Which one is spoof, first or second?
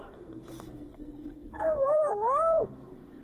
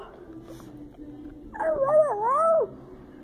first